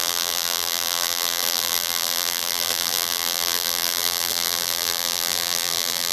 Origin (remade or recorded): remade